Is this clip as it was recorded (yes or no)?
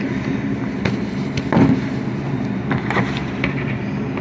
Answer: no